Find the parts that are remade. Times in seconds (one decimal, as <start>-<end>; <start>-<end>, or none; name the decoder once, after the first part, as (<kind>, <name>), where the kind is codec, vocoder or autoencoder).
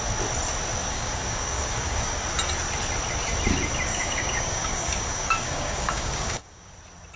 0.8-2.2 (codec, DAC); 3.9-6.7